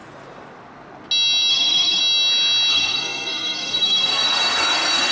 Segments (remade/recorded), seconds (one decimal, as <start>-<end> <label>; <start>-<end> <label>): 0.0-1.5 recorded; 1.5-2.0 remade; 2.0-2.7 recorded; 2.7-5.1 remade

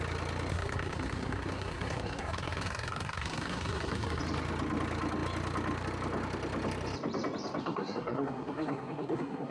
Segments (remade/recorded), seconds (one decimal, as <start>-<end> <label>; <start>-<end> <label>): 0.0-0.5 recorded; 0.5-4.2 remade; 4.2-7.6 recorded; 7.6-9.5 remade

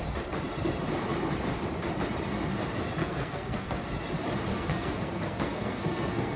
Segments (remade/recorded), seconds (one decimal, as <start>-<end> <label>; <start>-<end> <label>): 0.0-3.0 recorded; 3.0-3.8 remade; 3.8-4.5 recorded; 4.5-6.4 remade

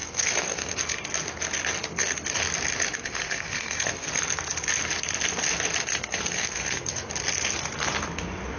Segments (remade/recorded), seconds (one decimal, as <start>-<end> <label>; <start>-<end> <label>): 0.0-0.8 remade; 0.8-1.9 recorded; 1.9-2.4 remade; 2.4-2.9 recorded; 2.9-4.2 remade; 4.2-5.8 recorded; 5.8-7.1 remade; 7.1-8.6 recorded

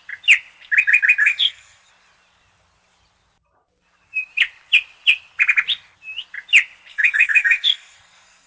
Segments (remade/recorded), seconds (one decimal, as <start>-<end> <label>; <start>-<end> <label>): 0.0-1.2 recorded; 1.2-1.9 remade; 1.9-6.9 recorded; 6.9-8.5 remade

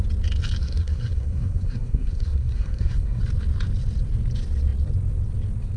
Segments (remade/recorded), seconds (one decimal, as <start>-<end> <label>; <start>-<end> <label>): 0.0-0.6 recorded; 0.6-3.2 remade; 3.2-5.8 recorded

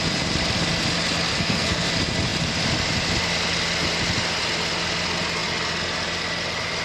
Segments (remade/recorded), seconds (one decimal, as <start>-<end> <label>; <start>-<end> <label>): 0.0-1.3 recorded; 1.3-1.9 remade; 1.9-6.8 recorded

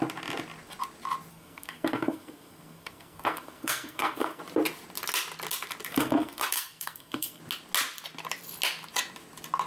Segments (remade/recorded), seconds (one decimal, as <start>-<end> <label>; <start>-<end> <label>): 0.0-1.3 recorded; 1.3-4.4 remade; 4.4-5.9 recorded; 5.9-7.4 remade; 7.4-9.7 recorded